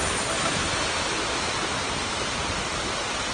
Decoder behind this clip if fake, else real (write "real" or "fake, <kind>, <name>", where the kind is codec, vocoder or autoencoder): real